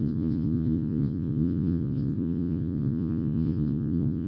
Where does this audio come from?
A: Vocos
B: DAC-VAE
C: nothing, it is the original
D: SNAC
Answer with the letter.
A